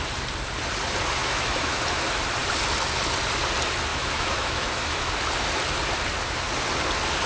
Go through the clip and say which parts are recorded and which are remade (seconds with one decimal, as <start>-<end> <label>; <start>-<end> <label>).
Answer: 0.0-1.2 recorded; 1.2-1.8 remade; 1.8-3.9 recorded; 3.9-5.1 remade; 5.1-7.3 recorded